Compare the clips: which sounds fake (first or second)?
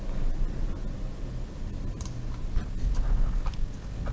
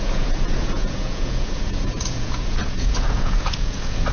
second